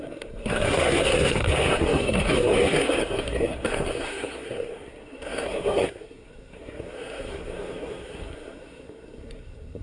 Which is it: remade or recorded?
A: remade